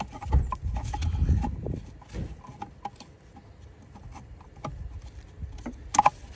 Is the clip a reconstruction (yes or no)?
no